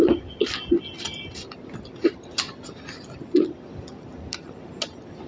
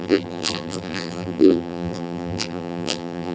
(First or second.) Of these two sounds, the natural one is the first